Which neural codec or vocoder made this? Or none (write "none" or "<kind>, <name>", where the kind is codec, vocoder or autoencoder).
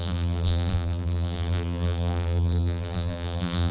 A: vocoder, BigVGAN v2